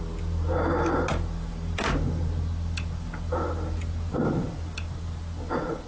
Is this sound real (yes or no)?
yes